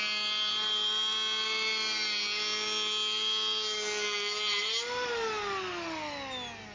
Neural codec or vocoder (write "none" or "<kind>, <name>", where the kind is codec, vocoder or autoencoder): none